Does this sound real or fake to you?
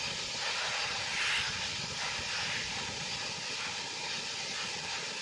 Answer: real